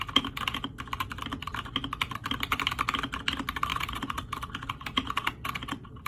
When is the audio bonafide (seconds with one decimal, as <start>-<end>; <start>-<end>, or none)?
0.0-3.7